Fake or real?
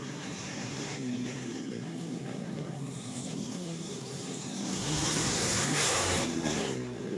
fake